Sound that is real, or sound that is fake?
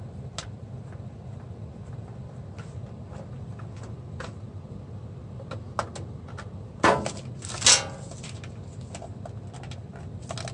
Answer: real